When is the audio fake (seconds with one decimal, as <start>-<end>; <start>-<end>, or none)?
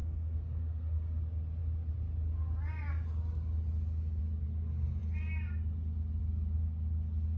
0.0-1.2